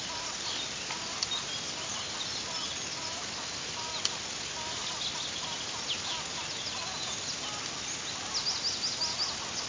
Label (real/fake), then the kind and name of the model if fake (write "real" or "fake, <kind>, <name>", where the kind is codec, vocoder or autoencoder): real